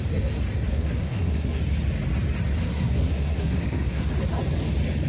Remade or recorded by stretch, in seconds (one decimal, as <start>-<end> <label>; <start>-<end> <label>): 0.0-0.7 recorded; 0.7-1.6 remade; 1.6-2.6 recorded; 2.6-4.1 remade; 4.1-5.1 recorded